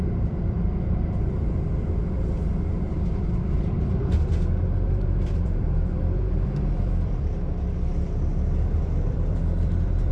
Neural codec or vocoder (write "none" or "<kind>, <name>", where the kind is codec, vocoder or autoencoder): vocoder, BigVGAN v2